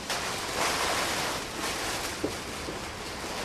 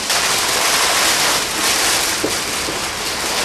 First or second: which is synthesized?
first